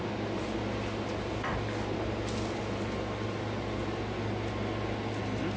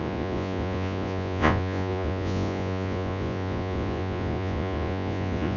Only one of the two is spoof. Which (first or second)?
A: second